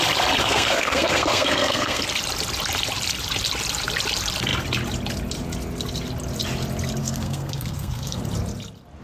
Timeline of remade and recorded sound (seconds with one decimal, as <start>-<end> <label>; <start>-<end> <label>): 0.0-0.4 recorded; 0.4-2.0 remade; 2.0-7.0 recorded; 7.0-8.2 remade; 8.2-9.0 recorded